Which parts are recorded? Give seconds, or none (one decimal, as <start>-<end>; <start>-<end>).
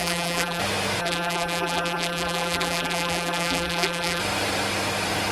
0.6-1.0; 4.2-5.3